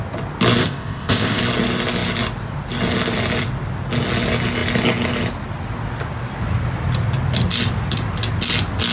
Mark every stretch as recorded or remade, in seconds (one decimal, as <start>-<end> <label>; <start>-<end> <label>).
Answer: 0.0-0.6 recorded; 0.6-1.4 remade; 1.4-8.9 recorded